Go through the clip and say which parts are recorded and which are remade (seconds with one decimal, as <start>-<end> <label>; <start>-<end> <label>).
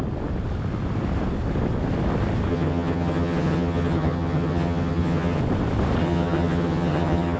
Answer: 0.0-2.5 recorded; 2.5-5.4 remade; 5.4-6.0 recorded; 6.0-7.4 remade